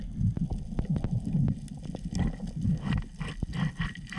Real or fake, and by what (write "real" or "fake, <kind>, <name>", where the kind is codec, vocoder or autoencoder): real